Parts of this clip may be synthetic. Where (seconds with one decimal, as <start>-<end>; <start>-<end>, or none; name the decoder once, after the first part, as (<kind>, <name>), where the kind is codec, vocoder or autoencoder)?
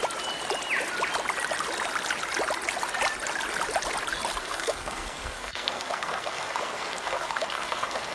4.4-8.1 (codec, SNAC)